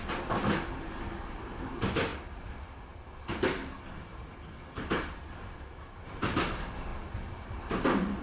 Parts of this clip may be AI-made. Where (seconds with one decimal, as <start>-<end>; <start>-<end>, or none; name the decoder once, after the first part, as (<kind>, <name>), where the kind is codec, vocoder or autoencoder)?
3.6-6.4 (vocoder, BigVGAN v2)